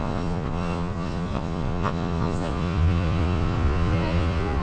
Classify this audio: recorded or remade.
remade